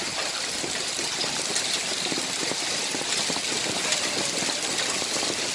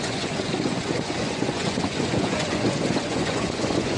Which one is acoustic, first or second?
first